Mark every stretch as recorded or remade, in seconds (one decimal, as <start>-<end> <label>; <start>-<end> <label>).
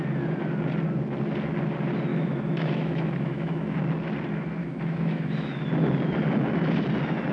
0.0-2.1 recorded; 2.1-3.8 remade; 3.8-4.6 recorded; 4.6-5.6 remade; 5.6-7.3 recorded